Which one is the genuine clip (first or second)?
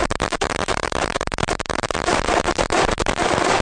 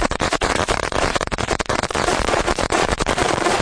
first